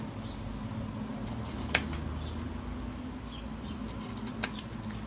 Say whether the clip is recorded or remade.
recorded